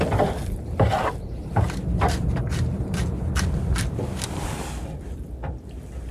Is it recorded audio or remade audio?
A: recorded